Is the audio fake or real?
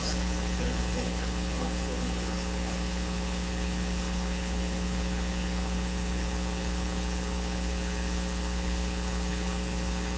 fake